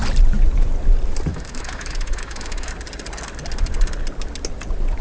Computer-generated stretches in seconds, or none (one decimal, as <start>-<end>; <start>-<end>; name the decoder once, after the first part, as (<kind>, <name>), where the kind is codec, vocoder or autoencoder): 1.3-2.7 (autoencoder, DAC-VAE)